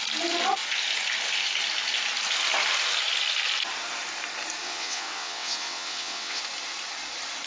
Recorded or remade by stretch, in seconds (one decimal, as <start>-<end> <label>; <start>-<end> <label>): 0.0-4.6 recorded; 4.6-6.4 remade; 6.4-7.5 recorded